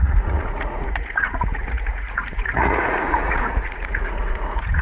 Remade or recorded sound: remade